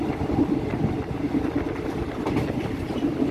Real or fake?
real